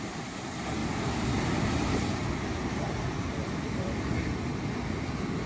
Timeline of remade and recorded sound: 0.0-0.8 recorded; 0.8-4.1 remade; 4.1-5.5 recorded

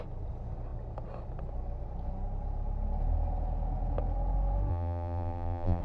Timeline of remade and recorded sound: 0.0-4.7 recorded; 4.7-5.8 remade

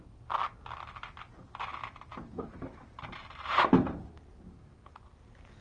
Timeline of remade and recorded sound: 0.0-2.1 recorded; 2.1-4.2 remade; 4.2-5.6 recorded